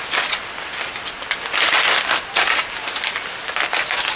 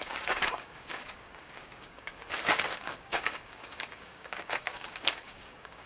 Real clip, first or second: first